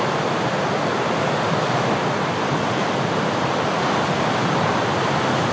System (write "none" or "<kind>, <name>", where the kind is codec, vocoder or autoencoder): none